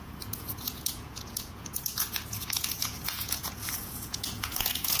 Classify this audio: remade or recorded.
remade